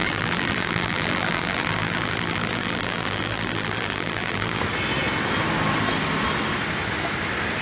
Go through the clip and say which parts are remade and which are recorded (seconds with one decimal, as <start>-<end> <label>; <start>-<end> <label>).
0.0-4.6 remade; 4.6-7.6 recorded